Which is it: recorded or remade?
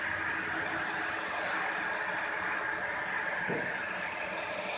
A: recorded